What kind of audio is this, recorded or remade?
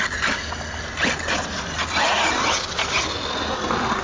recorded